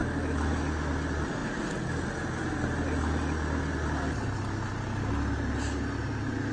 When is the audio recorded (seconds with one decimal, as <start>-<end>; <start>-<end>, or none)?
0.9-6.5